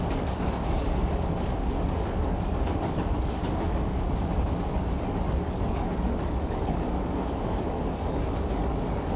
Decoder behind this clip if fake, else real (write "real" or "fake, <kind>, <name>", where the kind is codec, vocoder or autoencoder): fake, codec, DAC